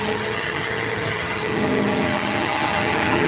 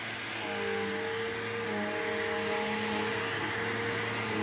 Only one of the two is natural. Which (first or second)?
second